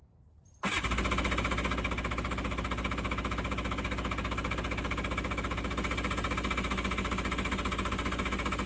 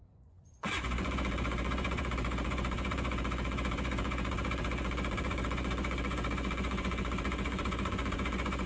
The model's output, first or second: second